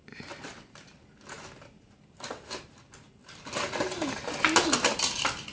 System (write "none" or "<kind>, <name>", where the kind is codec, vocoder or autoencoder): none